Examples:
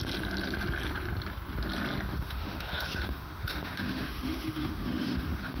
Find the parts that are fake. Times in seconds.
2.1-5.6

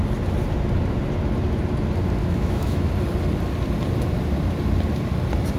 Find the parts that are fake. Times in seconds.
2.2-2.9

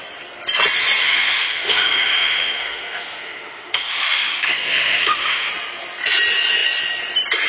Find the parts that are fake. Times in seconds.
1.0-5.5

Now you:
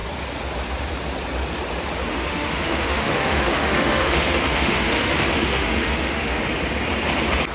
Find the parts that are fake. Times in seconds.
2.1-6.4

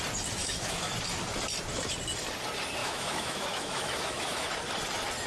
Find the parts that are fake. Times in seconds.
0.4-0.9; 2.8-4.5